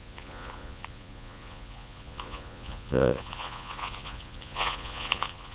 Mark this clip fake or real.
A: fake